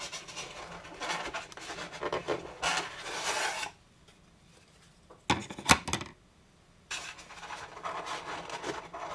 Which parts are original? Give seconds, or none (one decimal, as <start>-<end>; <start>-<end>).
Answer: 0.0-9.1